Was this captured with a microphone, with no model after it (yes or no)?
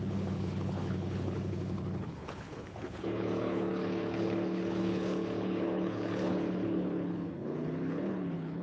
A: no